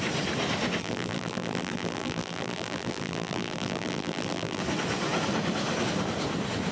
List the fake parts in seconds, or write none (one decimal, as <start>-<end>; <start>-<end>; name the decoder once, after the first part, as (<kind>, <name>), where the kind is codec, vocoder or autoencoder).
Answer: 0.8-4.6 (vocoder, BigVGAN v2)